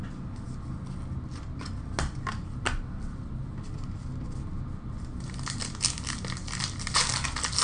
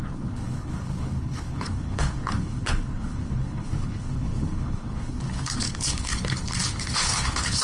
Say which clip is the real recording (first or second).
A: first